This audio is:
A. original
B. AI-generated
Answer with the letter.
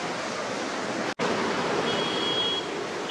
A